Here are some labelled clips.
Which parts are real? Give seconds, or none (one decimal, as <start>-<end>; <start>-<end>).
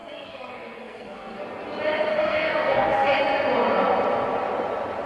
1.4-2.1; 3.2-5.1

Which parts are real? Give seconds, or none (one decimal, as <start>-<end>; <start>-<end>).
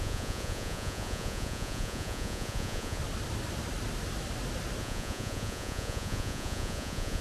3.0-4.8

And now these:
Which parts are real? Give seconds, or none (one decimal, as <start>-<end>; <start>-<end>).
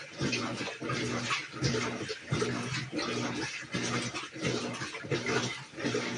0.8-6.2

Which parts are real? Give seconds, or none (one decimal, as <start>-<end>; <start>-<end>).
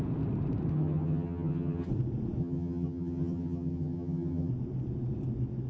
0.0-0.7; 1.9-2.4; 4.5-5.7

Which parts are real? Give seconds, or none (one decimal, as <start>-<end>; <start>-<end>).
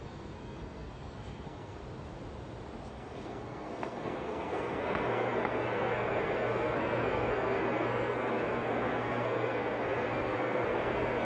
1.8-2.9